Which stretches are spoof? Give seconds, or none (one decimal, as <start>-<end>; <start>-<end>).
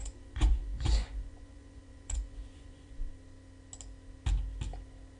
0.0-3.1